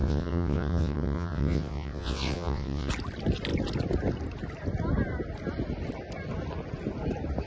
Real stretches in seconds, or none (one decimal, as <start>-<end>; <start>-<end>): 2.9-7.5